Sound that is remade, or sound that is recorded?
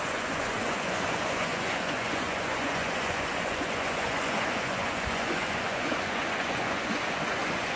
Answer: remade